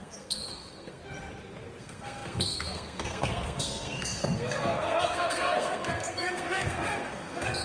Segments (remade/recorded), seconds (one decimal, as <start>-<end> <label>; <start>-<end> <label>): 0.0-1.0 remade; 1.0-1.8 recorded; 1.8-7.6 remade